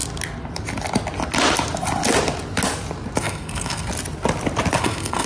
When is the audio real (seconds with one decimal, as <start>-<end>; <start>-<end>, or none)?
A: 0.0-3.2; 3.9-4.8